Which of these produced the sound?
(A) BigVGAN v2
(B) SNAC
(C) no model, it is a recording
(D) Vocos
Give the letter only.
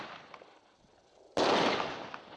C